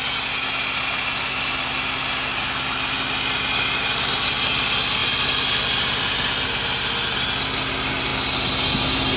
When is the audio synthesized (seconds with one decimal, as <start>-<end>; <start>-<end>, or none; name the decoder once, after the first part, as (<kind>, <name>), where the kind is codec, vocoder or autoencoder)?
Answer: none